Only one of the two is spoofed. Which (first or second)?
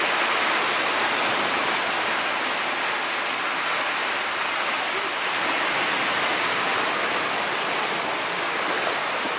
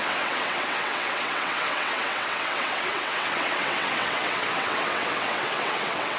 second